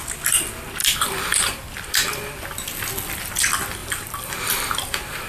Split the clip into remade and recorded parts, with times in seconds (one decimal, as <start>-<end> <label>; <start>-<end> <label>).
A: 0.0-0.8 recorded; 0.8-1.6 remade; 1.6-3.8 recorded; 3.8-5.3 remade